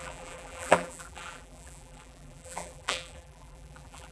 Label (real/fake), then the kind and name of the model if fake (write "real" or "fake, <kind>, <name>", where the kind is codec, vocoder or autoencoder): fake, vocoder, BigVGAN v2